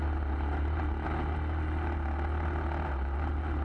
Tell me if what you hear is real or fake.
real